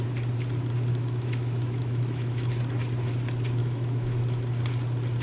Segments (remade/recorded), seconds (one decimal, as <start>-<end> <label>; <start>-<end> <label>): 0.0-0.9 recorded; 0.9-2.5 remade; 2.5-3.6 recorded; 3.6-4.2 remade; 4.2-5.2 recorded

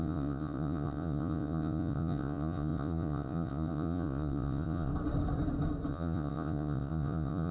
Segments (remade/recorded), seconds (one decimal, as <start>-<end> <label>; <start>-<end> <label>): 0.0-4.9 remade; 4.9-5.9 recorded; 5.9-7.5 remade